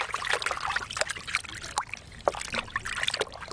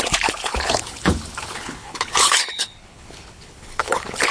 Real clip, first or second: first